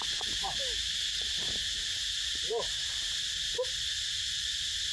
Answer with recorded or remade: remade